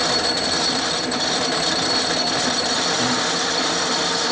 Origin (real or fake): fake